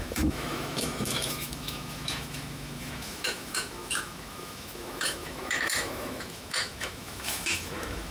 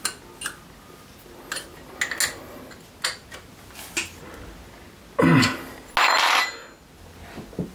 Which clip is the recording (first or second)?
second